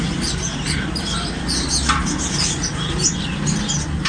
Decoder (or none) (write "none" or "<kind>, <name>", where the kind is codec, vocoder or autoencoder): none